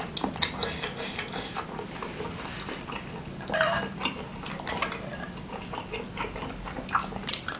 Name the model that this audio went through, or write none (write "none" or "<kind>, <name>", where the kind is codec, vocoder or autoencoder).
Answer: none